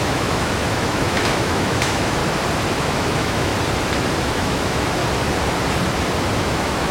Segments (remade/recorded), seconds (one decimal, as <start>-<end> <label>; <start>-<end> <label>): 0.0-2.2 remade; 2.2-2.7 recorded; 2.7-3.5 remade; 3.5-4.2 recorded; 4.2-5.0 remade; 5.0-6.4 recorded; 6.4-6.9 remade